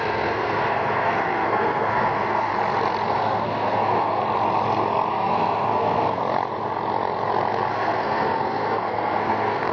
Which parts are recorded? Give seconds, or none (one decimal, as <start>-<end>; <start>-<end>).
2.5-3.1; 4.2-5.1; 6.2-7.7